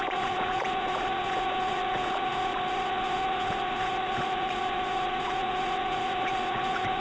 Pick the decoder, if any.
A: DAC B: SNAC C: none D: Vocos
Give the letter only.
D